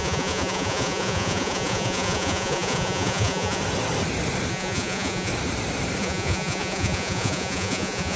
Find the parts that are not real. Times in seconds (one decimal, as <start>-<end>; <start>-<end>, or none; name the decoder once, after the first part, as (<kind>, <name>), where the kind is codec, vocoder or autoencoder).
0.0-3.6 (vocoder, Vocos); 4.5-5.3; 6.0-8.2